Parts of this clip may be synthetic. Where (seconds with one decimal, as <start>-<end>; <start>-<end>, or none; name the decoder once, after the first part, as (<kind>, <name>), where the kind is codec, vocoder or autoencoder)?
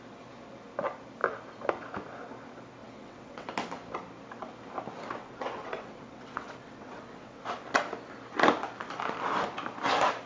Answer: 2.8-3.5 (vocoder, WaveNeXt); 5.2-7.4